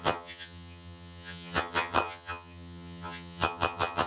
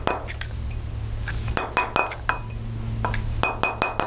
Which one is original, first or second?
second